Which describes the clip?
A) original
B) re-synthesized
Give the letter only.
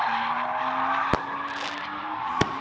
A